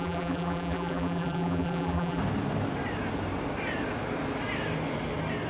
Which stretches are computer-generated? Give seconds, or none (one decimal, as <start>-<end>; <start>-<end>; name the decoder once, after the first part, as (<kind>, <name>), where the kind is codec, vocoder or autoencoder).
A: 0.0-2.2 (vocoder, BigVGAN v2)